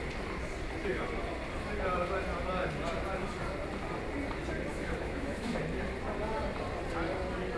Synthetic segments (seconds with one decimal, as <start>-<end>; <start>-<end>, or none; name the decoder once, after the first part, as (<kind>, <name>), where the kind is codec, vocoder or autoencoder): 4.7-5.6 (autoencoder, DAC-VAE)